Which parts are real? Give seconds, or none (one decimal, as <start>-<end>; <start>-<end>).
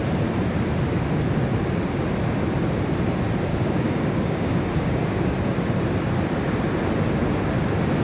0.0-3.5; 5.3-8.0